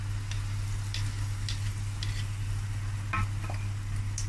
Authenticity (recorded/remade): recorded